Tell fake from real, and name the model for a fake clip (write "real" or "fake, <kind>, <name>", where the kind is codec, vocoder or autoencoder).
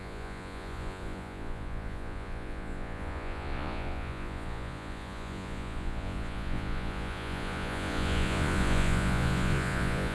fake, vocoder, Vocos